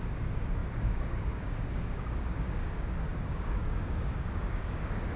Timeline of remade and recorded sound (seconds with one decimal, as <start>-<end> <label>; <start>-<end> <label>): 0.0-5.2 remade